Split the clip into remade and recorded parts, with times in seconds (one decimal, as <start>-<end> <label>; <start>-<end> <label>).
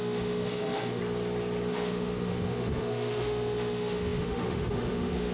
0.0-1.0 remade; 1.0-1.7 recorded; 1.7-5.3 remade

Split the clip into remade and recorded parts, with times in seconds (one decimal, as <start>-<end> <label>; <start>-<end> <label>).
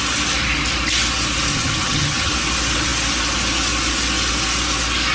0.0-1.5 recorded; 1.5-2.3 remade; 2.3-5.1 recorded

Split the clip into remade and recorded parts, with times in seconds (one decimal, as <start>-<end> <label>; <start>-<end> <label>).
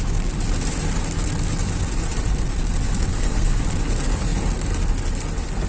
0.0-3.1 recorded; 3.1-3.6 remade; 3.6-5.7 recorded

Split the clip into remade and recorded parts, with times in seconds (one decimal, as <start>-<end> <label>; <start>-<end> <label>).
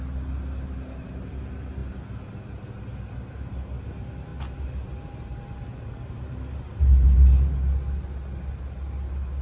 0.0-9.4 recorded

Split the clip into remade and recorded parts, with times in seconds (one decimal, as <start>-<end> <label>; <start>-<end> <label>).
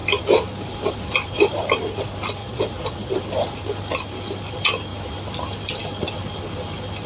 0.0-2.4 recorded; 2.4-3.2 remade; 3.2-7.1 recorded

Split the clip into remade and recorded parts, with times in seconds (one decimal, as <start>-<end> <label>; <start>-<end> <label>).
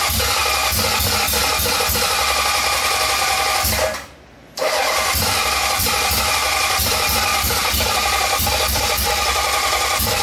0.0-0.4 remade; 0.4-4.6 recorded; 4.6-10.2 remade